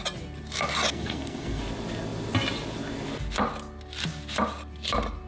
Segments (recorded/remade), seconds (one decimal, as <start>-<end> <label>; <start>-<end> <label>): 0.0-0.9 recorded; 0.9-1.6 remade; 1.6-5.3 recorded